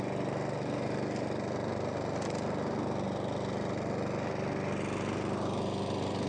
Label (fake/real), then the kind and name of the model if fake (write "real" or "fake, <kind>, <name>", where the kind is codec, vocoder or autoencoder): real